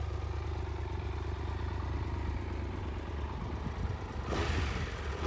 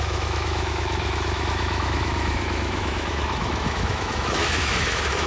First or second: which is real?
first